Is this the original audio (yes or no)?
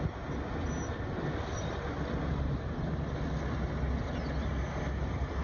yes